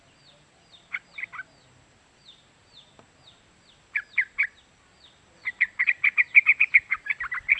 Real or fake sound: real